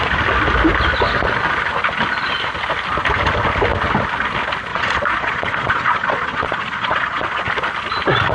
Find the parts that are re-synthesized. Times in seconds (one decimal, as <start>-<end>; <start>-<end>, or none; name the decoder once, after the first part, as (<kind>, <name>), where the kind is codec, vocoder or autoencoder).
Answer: 4.7-7.4 (vocoder, Vocos)